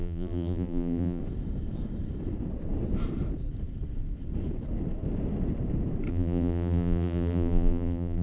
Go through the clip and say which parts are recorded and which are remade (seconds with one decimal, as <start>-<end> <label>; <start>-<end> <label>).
0.0-1.2 remade; 1.2-6.1 recorded; 6.1-8.2 remade